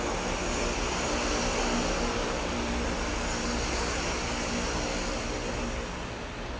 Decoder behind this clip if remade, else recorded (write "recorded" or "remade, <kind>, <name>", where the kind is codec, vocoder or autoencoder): recorded